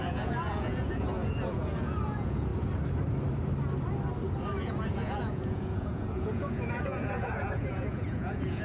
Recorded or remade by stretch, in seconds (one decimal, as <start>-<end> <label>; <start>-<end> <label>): 0.0-2.5 remade; 2.5-4.6 recorded; 4.6-8.6 remade